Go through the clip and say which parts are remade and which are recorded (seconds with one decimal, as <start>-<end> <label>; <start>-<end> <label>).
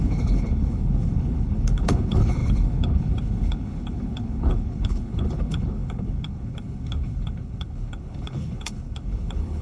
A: 0.0-9.6 remade